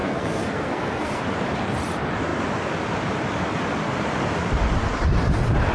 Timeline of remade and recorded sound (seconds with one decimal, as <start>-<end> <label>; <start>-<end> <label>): 0.0-1.2 remade; 1.2-5.7 recorded

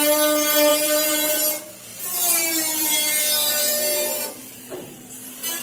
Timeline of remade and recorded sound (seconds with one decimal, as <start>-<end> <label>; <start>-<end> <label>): 0.0-0.7 recorded; 0.7-1.4 remade; 1.4-1.9 recorded; 1.9-5.6 remade

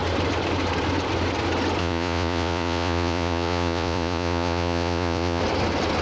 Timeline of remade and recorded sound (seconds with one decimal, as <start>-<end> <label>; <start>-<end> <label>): 0.0-1.8 recorded; 1.8-5.4 remade; 5.4-6.0 recorded

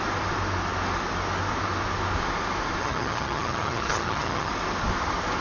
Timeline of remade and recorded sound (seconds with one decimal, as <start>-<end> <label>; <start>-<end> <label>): 0.0-2.8 recorded; 2.8-4.5 remade; 4.5-5.4 recorded

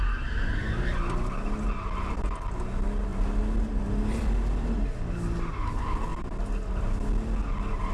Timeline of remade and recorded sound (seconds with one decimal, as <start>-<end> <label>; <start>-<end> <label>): 0.0-3.1 recorded; 3.1-5.1 remade; 5.1-7.9 recorded